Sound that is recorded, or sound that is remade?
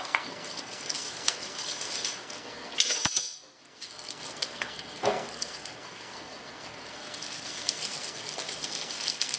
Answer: remade